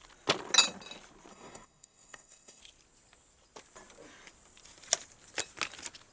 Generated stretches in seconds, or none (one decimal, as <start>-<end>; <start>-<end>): 1.3-2.6